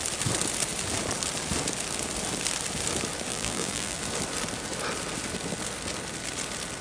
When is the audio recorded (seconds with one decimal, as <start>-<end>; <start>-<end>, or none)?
0.0-3.3; 4.0-6.8